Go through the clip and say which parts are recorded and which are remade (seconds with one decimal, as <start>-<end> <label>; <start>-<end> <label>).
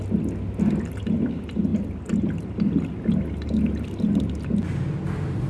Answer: 0.0-5.5 recorded